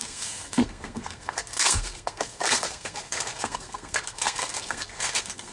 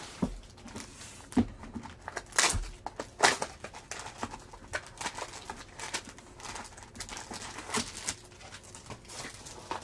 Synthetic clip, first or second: first